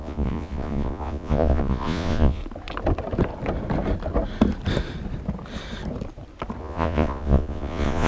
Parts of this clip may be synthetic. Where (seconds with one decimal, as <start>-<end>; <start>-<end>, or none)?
0.0-2.4; 6.6-8.1